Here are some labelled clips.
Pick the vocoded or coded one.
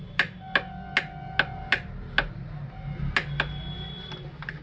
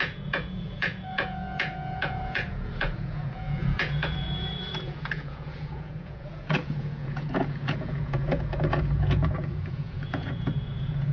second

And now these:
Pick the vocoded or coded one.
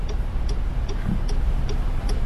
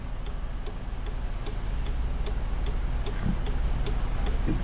first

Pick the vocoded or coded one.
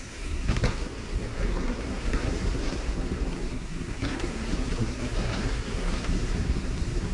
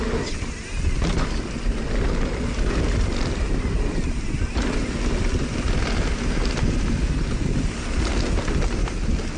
first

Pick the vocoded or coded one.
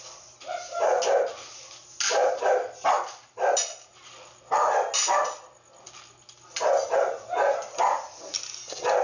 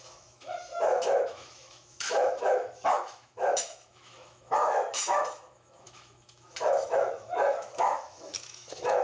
second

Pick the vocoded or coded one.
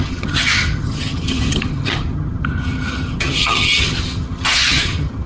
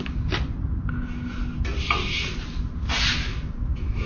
first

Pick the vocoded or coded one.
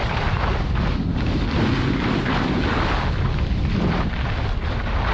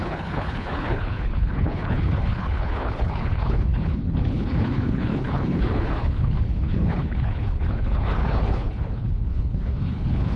second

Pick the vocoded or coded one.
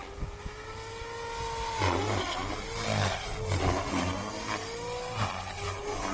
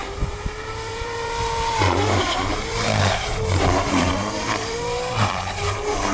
second